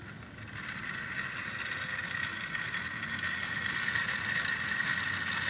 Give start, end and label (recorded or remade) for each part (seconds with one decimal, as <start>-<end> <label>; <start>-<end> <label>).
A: 0.0-5.5 recorded